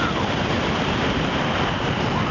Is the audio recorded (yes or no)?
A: no